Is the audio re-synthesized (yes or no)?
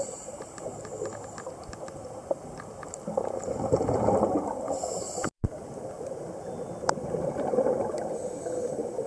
no